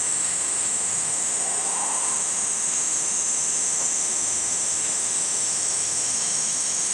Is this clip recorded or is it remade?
remade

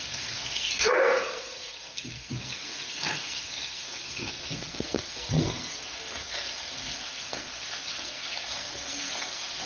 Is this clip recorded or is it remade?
remade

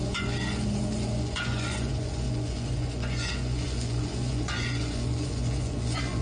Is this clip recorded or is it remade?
remade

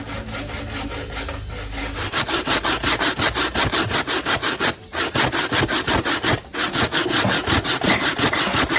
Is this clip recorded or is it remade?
recorded